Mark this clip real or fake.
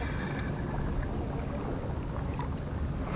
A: real